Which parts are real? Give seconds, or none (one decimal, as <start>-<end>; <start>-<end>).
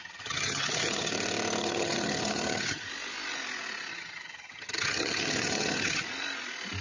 1.1-1.6; 2.9-3.9; 6.0-6.8